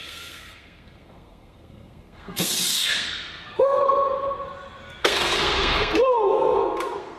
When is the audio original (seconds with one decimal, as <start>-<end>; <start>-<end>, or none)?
3.9-5.0